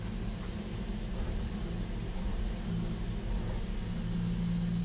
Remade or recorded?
recorded